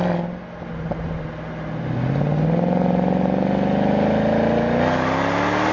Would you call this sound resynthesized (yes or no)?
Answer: no